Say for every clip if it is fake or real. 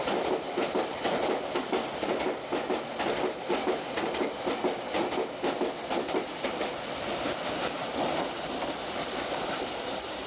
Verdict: real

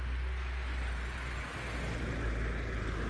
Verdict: real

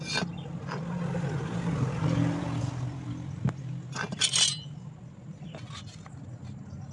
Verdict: real